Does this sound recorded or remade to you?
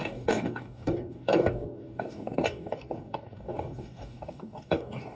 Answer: remade